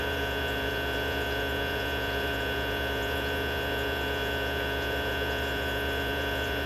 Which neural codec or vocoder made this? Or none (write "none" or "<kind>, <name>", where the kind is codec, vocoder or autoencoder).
vocoder, Vocos